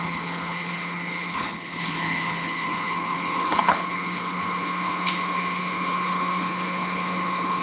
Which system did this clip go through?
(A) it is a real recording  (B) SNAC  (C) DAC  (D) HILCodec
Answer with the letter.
D